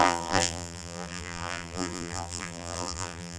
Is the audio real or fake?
fake